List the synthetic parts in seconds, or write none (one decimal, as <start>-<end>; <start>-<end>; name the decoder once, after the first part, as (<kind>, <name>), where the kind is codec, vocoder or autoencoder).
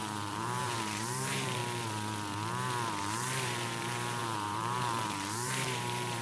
0.0-1.6 (vocoder, BigVGAN v2); 3.0-6.2